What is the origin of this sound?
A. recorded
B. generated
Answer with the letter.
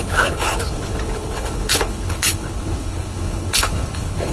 B